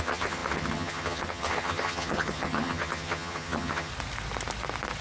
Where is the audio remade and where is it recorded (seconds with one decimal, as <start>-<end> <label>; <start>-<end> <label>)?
0.0-3.9 remade; 3.9-5.0 recorded